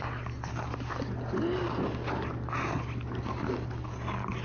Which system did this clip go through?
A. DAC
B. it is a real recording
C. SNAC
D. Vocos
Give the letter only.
B